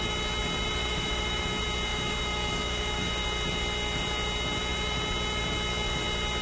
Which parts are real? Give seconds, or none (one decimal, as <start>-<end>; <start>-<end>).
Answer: 0.0-0.8; 1.4-1.9; 3.1-6.4